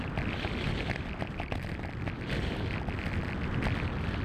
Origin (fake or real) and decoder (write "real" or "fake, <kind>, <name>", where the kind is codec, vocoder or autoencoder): real